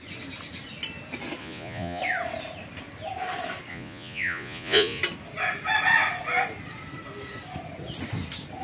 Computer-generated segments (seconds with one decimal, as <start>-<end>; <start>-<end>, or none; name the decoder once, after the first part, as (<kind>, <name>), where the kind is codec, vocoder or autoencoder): 1.4-2.0 (vocoder, Vocos); 3.7-5.0